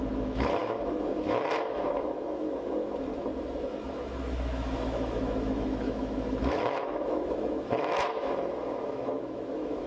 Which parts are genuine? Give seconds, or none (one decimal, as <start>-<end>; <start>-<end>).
3.1-3.6